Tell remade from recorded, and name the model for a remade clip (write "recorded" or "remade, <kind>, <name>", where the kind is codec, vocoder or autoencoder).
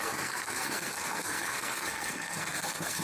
remade, codec, SNAC